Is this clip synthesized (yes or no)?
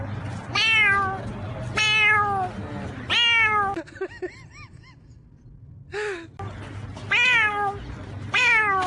no